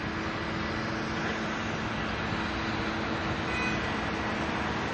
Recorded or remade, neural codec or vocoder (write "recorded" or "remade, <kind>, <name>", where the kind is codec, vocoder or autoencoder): recorded